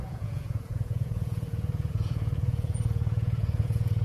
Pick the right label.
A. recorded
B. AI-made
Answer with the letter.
B